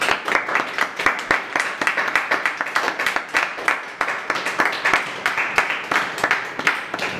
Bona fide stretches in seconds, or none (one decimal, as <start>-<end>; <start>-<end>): 0.0-7.2